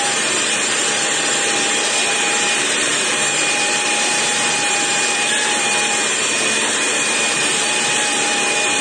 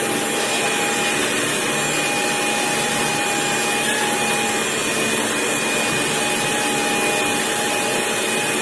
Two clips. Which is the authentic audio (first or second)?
second